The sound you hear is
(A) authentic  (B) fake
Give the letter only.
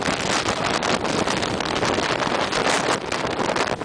A